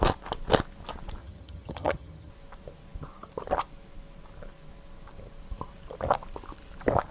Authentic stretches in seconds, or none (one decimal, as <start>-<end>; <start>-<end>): 0.0-1.2; 2.3-7.1